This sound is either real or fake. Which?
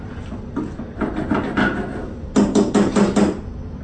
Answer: real